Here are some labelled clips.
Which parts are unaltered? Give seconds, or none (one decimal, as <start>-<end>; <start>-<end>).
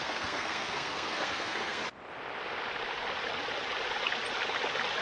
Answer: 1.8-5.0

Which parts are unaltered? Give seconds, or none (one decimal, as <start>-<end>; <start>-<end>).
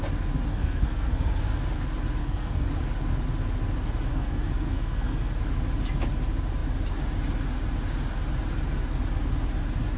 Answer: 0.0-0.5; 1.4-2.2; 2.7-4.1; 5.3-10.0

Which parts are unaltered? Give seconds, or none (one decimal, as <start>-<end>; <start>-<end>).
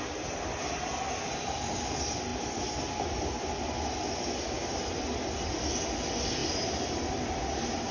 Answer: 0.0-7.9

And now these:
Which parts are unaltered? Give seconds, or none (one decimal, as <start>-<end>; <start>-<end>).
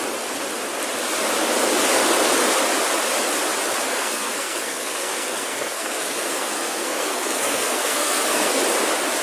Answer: 0.0-3.9; 8.6-9.2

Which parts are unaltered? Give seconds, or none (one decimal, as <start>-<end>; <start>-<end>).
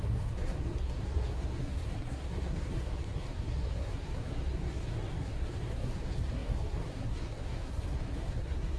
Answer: none